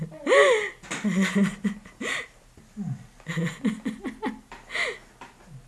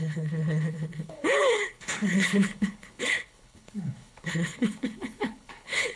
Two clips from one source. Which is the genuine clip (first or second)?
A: first